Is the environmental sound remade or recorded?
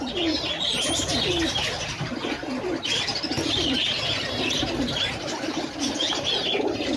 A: remade